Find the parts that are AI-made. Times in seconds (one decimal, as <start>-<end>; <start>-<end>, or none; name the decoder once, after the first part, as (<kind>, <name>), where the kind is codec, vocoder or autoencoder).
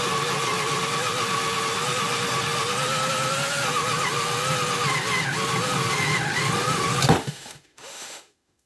7.2-8.7 (autoencoder, DAC-VAE)